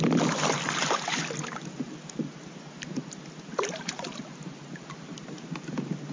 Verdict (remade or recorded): recorded